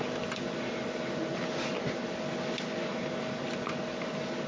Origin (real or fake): real